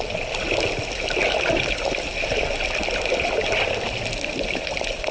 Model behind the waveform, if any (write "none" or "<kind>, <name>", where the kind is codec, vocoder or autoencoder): none